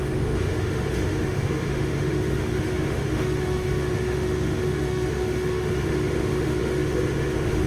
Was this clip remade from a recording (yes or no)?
yes